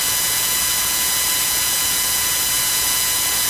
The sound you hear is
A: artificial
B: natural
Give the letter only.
A